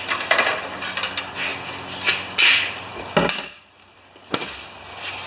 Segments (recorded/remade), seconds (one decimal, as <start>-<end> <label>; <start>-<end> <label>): 0.0-5.3 recorded